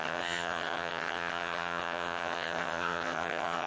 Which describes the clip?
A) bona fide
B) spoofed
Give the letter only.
B